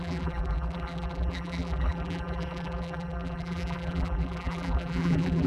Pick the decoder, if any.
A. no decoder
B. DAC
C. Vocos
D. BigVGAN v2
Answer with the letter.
D